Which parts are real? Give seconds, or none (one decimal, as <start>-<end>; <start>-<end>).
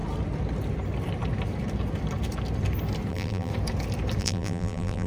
0.0-3.1; 3.5-4.2